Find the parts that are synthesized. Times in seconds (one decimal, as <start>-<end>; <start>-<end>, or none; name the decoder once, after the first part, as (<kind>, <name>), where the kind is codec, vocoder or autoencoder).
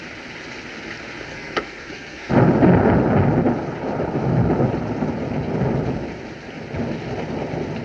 1.3-2.3 (codec, SNAC)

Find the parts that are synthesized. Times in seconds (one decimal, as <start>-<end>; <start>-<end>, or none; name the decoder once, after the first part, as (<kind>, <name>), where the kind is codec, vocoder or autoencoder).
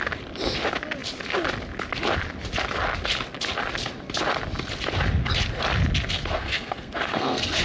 6.2-7.6 (codec, SNAC)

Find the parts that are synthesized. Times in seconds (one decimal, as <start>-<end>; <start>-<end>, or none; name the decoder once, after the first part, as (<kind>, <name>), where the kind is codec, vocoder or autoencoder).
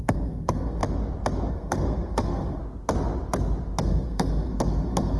0.0-0.8 (codec, SNAC); 1.5-2.6; 3.8-5.2